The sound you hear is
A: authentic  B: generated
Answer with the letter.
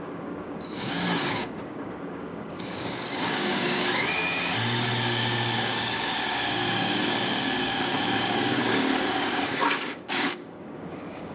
B